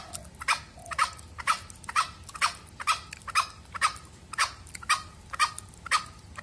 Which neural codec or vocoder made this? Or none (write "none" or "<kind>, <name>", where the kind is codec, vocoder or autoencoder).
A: none